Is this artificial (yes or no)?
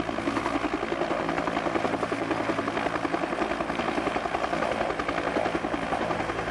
no